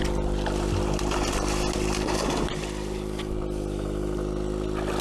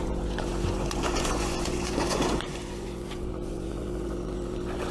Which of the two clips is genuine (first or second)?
first